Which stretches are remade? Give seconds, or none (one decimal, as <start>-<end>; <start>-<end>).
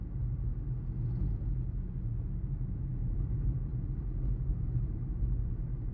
0.0-0.5; 2.9-5.9